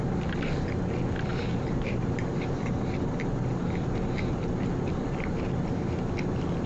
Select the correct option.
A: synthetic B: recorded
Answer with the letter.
B